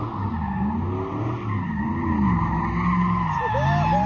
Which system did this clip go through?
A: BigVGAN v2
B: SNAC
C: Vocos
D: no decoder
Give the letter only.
D